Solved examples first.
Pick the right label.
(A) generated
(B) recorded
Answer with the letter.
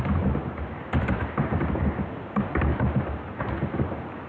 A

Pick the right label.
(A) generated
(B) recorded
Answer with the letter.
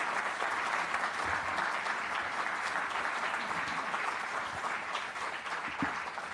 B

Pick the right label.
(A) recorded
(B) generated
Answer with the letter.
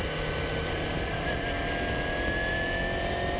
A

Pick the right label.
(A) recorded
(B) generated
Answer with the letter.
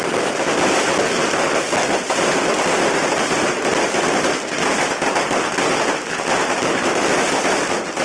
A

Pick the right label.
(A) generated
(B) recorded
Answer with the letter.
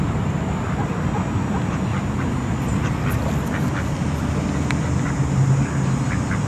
B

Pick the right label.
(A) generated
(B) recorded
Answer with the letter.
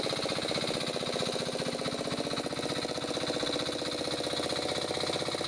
B